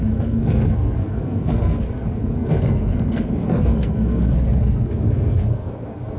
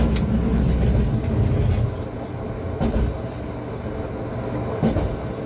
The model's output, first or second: first